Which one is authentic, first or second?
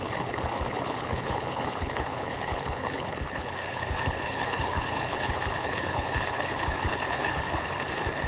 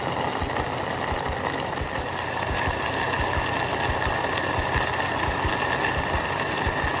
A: second